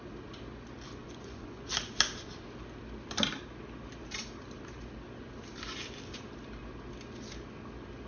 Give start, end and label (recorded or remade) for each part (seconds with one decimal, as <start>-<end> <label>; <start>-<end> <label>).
0.0-1.0 recorded; 1.0-1.7 remade; 1.7-8.1 recorded